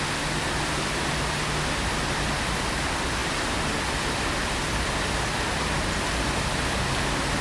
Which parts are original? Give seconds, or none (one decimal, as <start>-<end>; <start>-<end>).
0.0-7.4